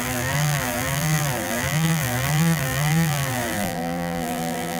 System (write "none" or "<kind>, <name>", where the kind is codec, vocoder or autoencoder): vocoder, BigVGAN v2